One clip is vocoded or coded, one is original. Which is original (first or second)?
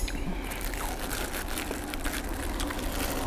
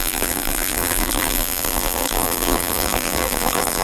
first